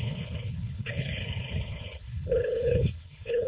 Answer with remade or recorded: remade